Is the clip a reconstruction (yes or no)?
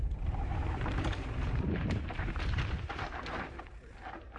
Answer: yes